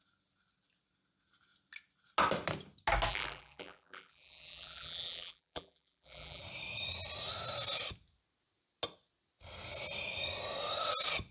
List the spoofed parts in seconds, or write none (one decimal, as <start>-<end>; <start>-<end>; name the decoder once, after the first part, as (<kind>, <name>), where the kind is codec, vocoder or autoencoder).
3.1-6.4 (vocoder, BigVGAN v2)